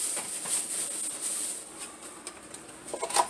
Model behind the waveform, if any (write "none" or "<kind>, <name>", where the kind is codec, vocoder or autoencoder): none